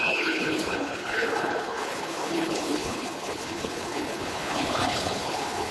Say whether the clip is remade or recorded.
remade